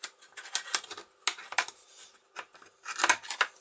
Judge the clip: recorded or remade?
recorded